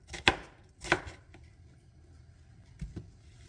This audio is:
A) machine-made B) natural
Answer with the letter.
B